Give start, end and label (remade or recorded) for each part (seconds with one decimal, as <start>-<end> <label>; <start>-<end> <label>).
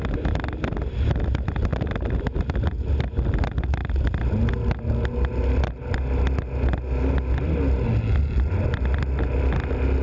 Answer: 0.0-10.0 recorded